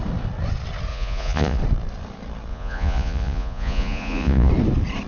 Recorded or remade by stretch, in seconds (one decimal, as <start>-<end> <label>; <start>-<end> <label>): 0.0-0.9 recorded; 0.9-1.6 remade; 1.6-2.5 recorded; 2.5-4.5 remade; 4.5-5.1 recorded